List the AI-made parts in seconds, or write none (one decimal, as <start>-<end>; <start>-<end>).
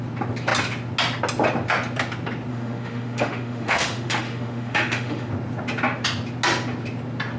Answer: 2.5-5.3